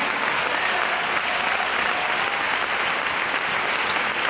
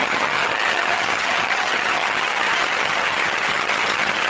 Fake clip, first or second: second